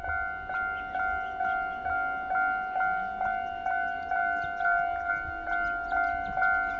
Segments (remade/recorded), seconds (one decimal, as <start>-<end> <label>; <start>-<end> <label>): 0.0-6.8 recorded